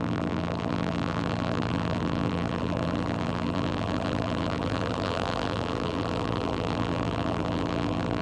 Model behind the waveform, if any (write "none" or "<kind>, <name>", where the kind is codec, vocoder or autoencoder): vocoder, BigVGAN v2